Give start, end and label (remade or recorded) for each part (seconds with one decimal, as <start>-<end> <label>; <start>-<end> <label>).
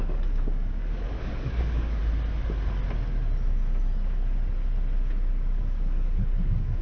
0.0-2.0 remade; 2.0-5.6 recorded; 5.6-6.8 remade